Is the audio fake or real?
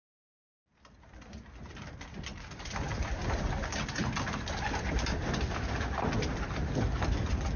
real